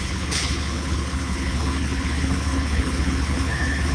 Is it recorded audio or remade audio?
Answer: remade